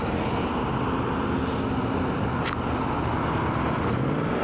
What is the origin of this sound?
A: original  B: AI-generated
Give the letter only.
A